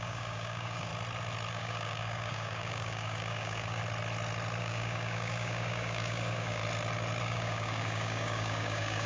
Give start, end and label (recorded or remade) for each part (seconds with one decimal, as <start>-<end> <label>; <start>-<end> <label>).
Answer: 0.0-0.9 remade; 0.9-1.5 recorded; 1.5-3.8 remade; 3.8-4.6 recorded; 4.6-6.6 remade; 6.6-7.2 recorded; 7.2-9.1 remade